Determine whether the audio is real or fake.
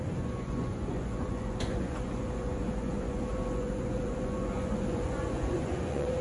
fake